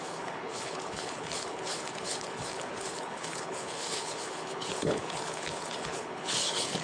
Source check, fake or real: fake